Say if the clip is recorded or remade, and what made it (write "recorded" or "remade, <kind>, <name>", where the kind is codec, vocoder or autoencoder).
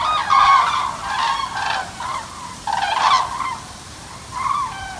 remade, vocoder, BigVGAN v2